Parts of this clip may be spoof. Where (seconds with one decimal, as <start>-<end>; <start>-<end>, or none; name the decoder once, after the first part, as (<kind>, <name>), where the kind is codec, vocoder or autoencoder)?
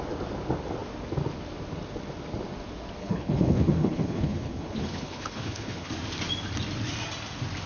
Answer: 3.0-5.9 (codec, HILCodec)